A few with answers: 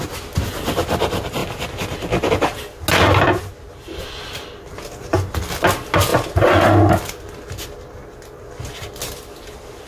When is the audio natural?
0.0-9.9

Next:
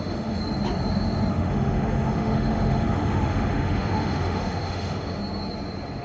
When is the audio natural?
0.4-1.3; 5.2-6.0

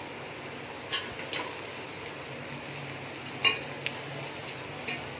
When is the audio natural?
0.0-5.2